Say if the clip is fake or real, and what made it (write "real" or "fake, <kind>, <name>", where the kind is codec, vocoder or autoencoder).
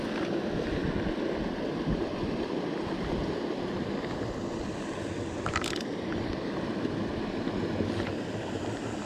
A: real